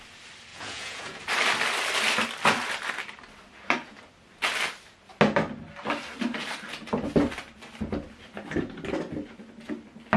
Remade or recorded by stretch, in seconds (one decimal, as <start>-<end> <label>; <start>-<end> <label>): 0.0-0.5 recorded; 0.5-1.2 remade; 1.2-10.2 recorded